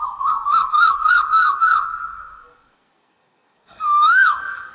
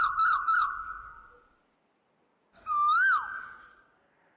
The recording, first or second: second